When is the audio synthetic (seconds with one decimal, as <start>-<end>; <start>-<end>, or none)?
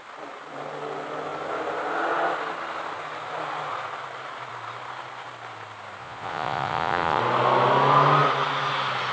6.0-7.2